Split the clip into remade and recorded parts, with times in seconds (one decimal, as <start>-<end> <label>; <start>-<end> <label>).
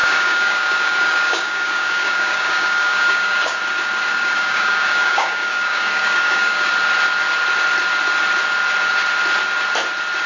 0.0-3.6 remade; 3.6-4.1 recorded; 4.1-6.7 remade; 6.7-10.3 recorded